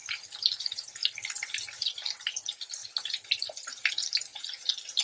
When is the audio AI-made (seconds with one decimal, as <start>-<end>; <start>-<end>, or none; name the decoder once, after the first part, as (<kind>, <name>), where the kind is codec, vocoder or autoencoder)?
0.6-2.8 (vocoder, BigVGAN v2); 3.9-5.0